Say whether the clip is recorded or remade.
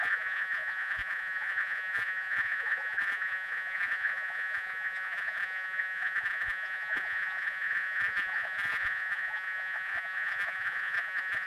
remade